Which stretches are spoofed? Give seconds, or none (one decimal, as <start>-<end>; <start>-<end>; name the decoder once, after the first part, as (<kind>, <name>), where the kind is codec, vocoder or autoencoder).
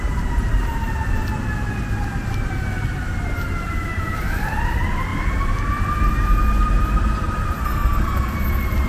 7.6-8.3 (codec, SNAC)